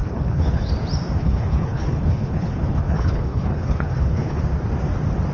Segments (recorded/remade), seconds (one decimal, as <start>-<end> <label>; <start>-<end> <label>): 0.0-0.7 remade; 0.7-1.2 recorded; 1.2-4.4 remade; 4.4-5.3 recorded